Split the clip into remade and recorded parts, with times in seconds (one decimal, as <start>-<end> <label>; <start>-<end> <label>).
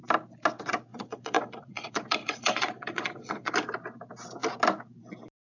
0.0-0.9 recorded; 0.9-3.5 remade; 3.5-5.5 recorded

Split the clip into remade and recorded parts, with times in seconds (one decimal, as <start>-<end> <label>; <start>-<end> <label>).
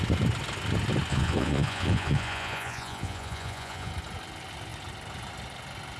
0.0-1.1 recorded; 1.1-3.9 remade; 3.9-6.0 recorded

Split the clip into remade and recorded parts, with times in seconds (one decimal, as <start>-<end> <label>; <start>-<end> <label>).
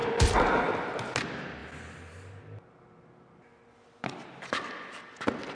0.0-5.5 recorded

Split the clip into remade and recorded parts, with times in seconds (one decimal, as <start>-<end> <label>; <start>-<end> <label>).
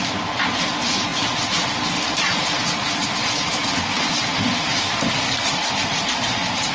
0.0-6.7 recorded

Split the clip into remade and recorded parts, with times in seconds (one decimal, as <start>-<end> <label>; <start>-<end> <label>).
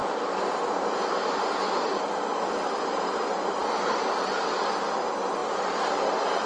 0.0-6.5 recorded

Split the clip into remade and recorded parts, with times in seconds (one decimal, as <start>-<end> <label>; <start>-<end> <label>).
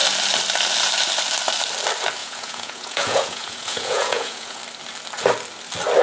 0.0-2.2 recorded; 2.2-4.6 remade; 4.6-6.0 recorded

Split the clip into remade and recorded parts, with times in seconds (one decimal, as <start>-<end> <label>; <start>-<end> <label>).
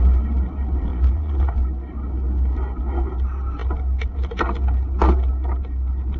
0.0-0.9 recorded; 0.9-1.5 remade; 1.5-6.2 recorded